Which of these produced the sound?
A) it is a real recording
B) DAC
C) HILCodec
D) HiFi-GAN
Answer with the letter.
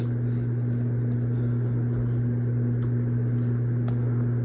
A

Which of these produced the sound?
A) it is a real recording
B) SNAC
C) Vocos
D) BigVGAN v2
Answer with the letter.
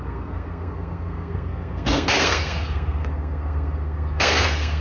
B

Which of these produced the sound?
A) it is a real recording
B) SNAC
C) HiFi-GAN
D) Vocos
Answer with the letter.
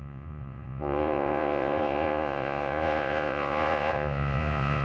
D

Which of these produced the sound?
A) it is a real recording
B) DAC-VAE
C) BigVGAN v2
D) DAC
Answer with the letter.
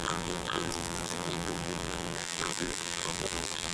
C